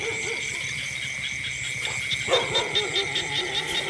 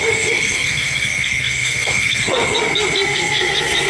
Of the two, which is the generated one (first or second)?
second